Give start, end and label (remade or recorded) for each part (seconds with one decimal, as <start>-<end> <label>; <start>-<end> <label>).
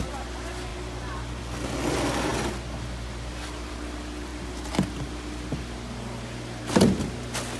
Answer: 0.0-7.6 recorded